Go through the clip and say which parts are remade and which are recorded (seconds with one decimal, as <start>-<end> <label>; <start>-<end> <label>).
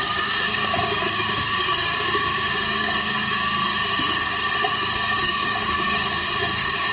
0.0-3.7 remade; 3.7-4.7 recorded; 4.7-6.9 remade